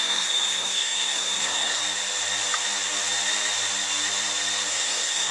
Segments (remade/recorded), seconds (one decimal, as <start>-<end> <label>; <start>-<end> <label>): 0.0-1.8 remade; 1.8-4.7 recorded; 4.7-5.3 remade